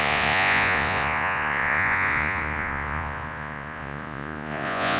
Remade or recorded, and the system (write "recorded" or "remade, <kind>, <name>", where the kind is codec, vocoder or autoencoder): remade, vocoder, Vocos